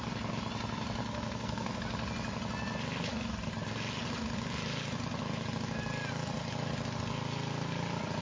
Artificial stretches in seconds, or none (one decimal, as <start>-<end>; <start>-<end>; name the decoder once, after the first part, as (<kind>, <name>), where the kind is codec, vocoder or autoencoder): 1.0-1.8 (codec, SNAC)